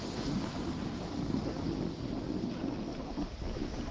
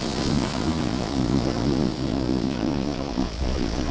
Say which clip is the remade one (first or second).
second